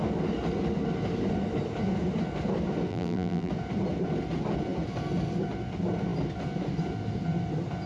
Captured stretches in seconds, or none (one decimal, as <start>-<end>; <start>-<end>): 0.0-2.9; 3.5-7.9